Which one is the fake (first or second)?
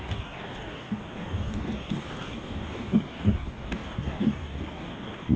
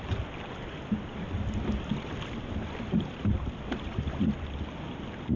first